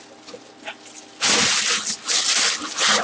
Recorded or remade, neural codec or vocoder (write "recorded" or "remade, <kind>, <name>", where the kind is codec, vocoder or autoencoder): recorded